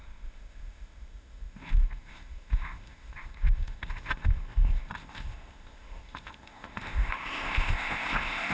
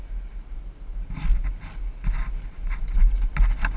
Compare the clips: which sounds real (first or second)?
second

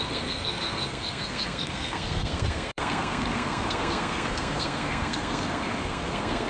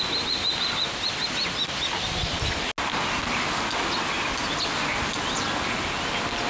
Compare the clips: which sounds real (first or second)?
second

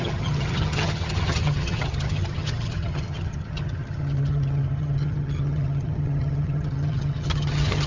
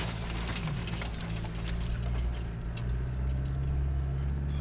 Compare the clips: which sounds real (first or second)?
second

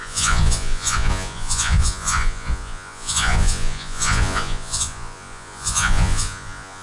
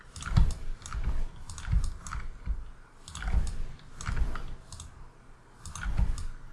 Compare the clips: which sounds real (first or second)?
second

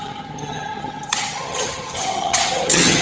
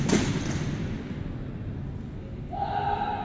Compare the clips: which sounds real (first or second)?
second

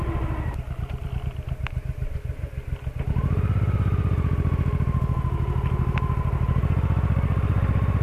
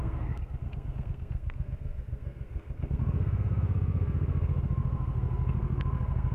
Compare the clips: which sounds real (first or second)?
first